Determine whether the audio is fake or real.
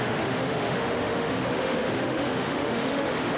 fake